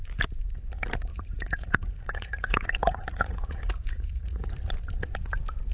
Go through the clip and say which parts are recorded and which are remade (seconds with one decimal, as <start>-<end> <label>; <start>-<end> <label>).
0.0-1.1 recorded; 1.1-4.5 remade; 4.5-5.7 recorded